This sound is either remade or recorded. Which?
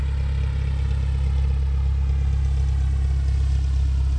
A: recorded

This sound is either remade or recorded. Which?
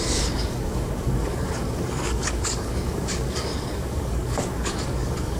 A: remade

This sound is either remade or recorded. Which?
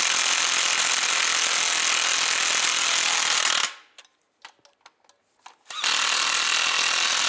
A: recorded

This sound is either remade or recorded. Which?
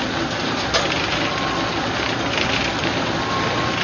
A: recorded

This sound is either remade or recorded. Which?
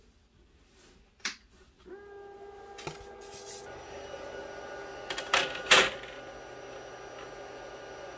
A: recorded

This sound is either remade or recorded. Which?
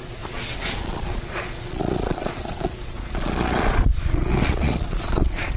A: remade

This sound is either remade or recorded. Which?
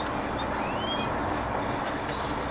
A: recorded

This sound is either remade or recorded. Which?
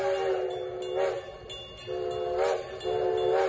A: recorded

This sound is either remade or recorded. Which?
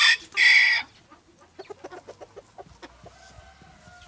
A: recorded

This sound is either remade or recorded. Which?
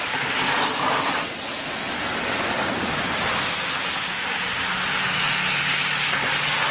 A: recorded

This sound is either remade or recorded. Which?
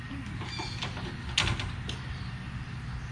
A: recorded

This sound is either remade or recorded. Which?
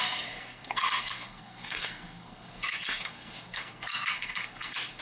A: remade